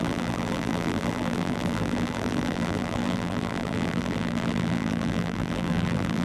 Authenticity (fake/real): fake